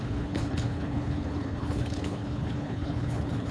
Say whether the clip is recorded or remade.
remade